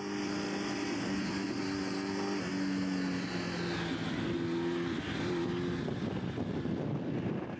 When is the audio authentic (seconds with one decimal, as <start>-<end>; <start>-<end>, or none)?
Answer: 0.0-7.6